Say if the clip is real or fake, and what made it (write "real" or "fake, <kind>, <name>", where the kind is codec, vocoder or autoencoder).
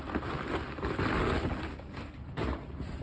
real